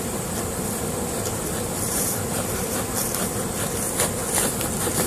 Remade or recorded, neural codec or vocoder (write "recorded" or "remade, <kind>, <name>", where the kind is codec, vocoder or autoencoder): recorded